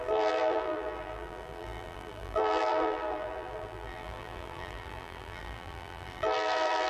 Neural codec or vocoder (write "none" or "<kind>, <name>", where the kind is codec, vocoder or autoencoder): vocoder, BigVGAN v2